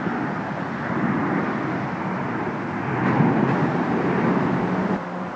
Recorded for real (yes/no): yes